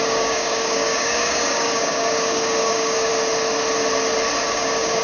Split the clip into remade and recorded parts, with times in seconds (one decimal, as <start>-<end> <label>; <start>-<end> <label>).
0.0-3.1 remade; 3.1-4.5 recorded; 4.5-5.0 remade